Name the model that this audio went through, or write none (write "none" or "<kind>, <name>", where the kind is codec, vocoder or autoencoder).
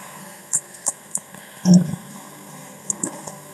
codec, SNAC